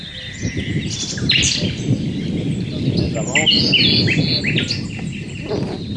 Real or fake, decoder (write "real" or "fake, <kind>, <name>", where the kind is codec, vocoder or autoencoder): real